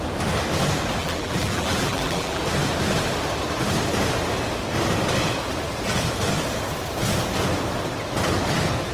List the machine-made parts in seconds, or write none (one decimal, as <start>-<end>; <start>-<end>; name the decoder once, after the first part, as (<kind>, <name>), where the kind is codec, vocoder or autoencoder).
1.0-2.4 (vocoder, BigVGAN v2)